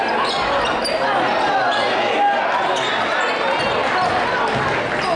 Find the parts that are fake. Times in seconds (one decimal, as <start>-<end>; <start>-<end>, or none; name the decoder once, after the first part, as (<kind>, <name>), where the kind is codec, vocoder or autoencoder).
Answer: none